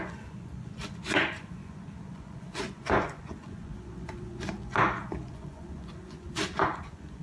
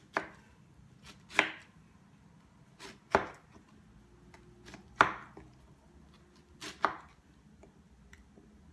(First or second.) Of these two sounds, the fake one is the first